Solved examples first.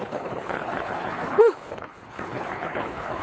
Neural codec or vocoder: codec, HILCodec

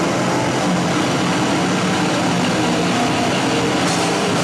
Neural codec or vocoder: none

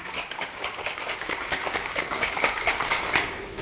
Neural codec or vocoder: codec, DAC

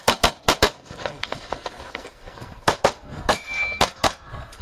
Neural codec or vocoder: codec, SNAC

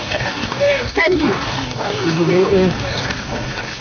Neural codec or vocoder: codec, DAC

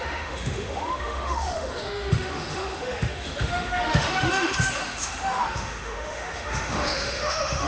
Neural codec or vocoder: autoencoder, DAC-VAE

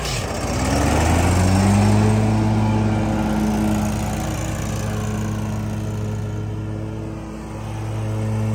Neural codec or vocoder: none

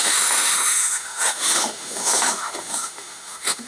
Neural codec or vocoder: autoencoder, DAC-VAE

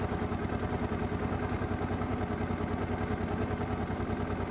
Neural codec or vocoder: none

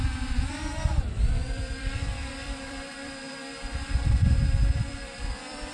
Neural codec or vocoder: vocoder, BigVGAN v2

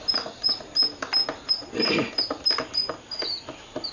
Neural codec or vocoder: none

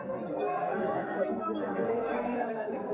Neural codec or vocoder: codec, SNAC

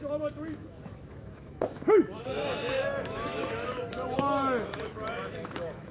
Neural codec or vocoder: autoencoder, DAC-VAE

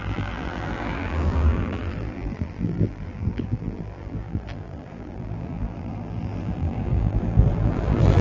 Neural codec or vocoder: vocoder, BigVGAN v2